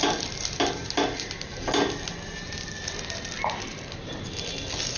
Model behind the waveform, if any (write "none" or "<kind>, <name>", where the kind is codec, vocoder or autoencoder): none